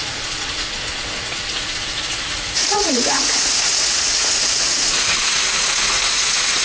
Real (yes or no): no